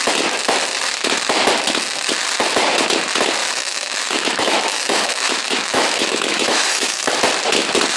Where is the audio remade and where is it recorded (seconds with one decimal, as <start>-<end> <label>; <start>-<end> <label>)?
0.0-3.4 recorded; 3.4-7.0 remade; 7.0-8.0 recorded